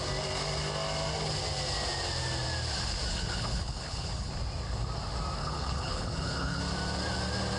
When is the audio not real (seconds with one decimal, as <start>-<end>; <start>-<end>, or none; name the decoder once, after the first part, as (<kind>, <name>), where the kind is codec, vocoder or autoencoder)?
3.1-4.3 (codec, HILCodec); 5.4-6.6